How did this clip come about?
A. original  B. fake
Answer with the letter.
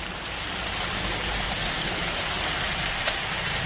B